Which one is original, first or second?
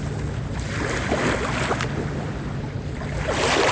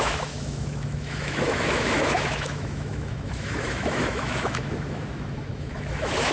first